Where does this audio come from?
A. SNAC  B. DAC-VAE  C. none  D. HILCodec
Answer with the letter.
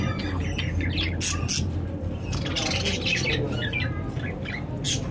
C